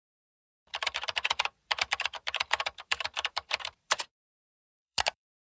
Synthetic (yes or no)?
yes